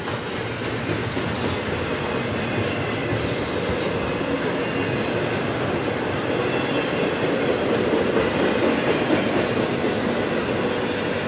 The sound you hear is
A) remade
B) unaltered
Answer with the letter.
B